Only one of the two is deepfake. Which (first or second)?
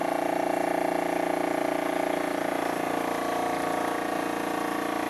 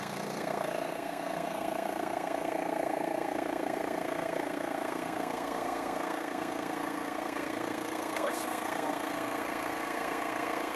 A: second